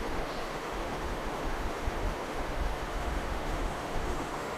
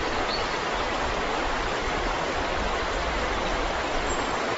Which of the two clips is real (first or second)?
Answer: second